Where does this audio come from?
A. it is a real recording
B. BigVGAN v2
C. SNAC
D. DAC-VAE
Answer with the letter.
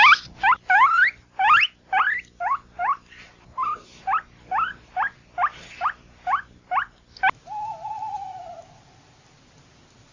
A